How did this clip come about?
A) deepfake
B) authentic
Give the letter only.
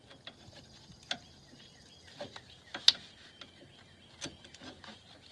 B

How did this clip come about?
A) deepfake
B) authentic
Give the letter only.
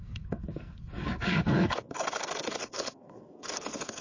A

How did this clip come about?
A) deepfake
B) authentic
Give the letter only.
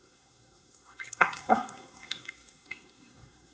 A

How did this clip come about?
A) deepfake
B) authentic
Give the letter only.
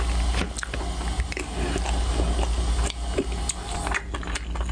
B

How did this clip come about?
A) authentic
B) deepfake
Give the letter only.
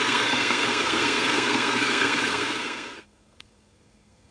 B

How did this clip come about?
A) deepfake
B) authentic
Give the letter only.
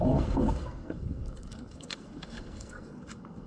A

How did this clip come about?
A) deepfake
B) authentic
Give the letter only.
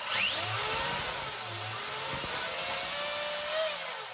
B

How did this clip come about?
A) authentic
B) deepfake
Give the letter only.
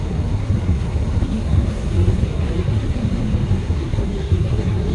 B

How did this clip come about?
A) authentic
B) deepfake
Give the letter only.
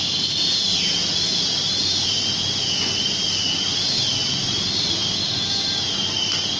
A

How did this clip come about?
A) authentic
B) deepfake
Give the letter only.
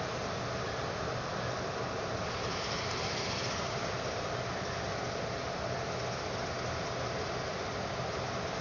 A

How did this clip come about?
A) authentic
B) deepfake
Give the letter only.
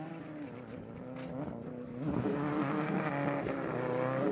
A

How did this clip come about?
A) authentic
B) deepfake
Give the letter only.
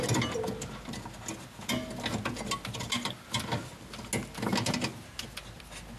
A